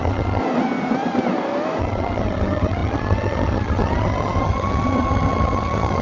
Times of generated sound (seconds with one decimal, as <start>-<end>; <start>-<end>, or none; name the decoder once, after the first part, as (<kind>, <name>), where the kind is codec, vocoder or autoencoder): 0.0-0.4 (vocoder, HiFi-GAN); 1.8-6.0